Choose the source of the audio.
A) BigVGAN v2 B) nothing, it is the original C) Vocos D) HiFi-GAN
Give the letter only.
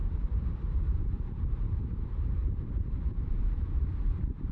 A